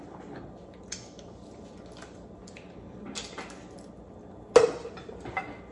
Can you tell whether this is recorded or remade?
recorded